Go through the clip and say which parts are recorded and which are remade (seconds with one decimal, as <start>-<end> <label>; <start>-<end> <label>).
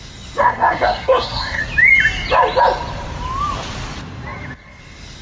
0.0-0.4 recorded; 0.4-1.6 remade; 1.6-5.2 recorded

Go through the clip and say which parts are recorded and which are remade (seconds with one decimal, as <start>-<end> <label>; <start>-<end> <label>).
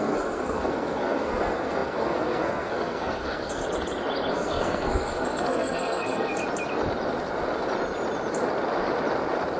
0.0-3.6 remade; 3.6-4.3 recorded; 4.3-6.4 remade; 6.4-9.6 recorded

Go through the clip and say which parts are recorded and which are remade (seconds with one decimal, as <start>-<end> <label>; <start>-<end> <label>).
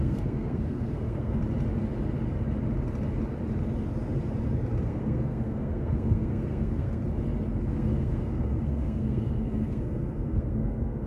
0.0-1.4 remade; 1.4-4.8 recorded; 4.8-7.0 remade; 7.0-7.6 recorded; 7.6-11.1 remade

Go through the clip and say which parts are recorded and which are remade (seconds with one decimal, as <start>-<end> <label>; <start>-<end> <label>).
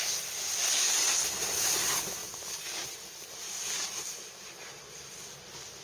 0.0-2.2 recorded; 2.2-5.1 remade; 5.1-5.8 recorded